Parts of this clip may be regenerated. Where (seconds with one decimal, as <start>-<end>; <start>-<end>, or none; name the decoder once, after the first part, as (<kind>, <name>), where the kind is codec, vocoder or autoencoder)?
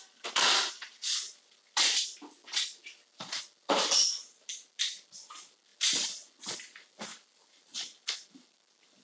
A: none